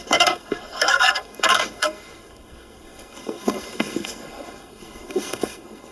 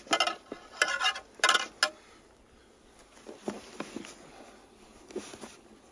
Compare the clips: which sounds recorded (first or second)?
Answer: second